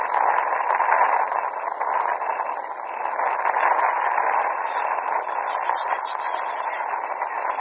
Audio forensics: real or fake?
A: real